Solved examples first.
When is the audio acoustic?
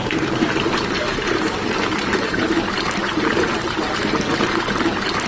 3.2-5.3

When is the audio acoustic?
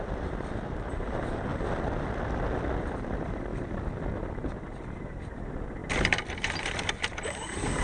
1.5-2.8; 3.5-4.1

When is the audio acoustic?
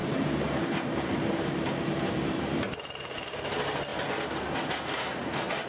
3.4-5.7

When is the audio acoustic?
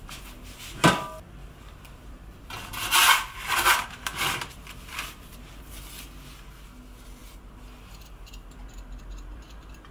0.0-1.4; 5.6-9.9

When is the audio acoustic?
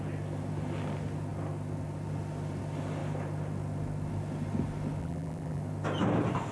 0.0-5.0; 5.6-6.5